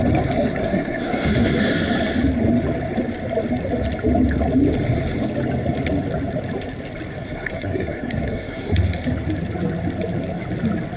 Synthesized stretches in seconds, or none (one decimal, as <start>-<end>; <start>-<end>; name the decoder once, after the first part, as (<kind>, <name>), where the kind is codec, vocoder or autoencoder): 0.6-1.6 (codec, SNAC); 7.2-8.7